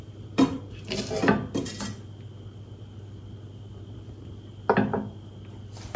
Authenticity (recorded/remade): recorded